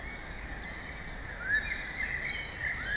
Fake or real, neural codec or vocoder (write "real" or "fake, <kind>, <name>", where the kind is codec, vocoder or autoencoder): real